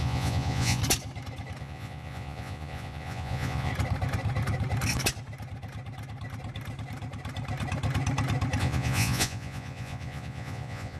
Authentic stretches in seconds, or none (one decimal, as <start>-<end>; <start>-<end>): 0.8-1.6; 3.7-8.6